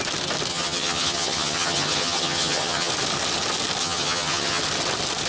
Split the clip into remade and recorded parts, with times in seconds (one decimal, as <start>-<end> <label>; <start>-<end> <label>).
0.0-0.5 recorded; 0.5-2.9 remade; 2.9-3.8 recorded; 3.8-4.6 remade; 4.6-5.3 recorded